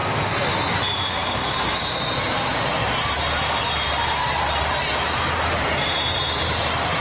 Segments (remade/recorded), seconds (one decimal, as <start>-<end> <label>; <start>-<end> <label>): 0.0-0.7 recorded; 0.7-7.0 remade